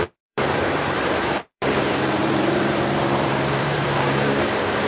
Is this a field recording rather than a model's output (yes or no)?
no